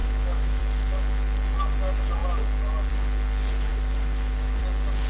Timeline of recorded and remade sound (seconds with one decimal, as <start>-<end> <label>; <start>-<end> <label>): 0.0-0.6 remade; 0.6-3.7 recorded; 3.7-4.6 remade; 4.6-5.1 recorded